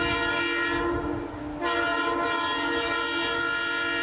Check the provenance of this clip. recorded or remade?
recorded